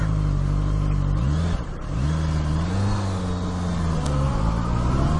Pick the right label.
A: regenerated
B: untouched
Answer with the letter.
B